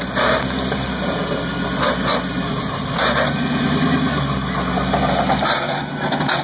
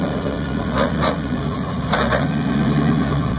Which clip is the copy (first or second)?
second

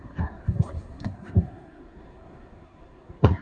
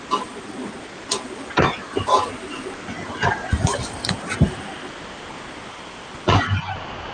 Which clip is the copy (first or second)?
first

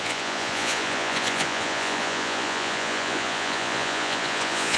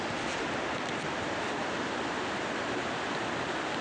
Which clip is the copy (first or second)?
first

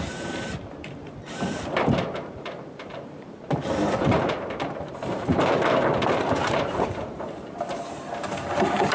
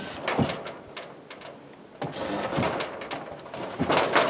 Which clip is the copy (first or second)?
first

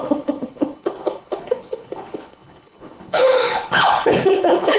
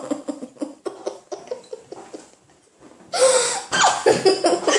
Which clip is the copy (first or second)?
first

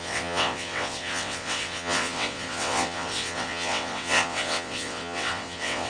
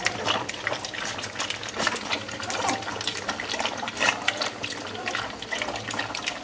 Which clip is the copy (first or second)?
first